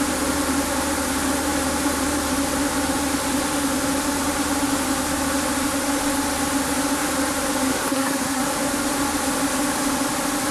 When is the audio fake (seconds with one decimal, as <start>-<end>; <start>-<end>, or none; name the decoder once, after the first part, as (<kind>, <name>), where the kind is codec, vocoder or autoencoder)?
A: 7.7-8.4 (codec, SNAC)